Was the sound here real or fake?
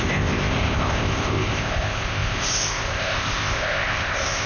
fake